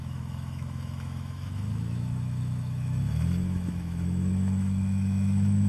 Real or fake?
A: fake